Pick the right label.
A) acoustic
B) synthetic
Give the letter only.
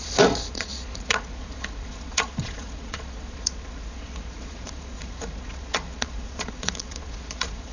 B